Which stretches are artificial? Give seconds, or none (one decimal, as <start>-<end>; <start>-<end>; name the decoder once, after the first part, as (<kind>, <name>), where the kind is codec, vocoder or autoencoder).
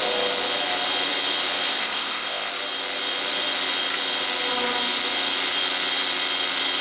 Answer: 1.7-2.5 (codec, ZipCodec)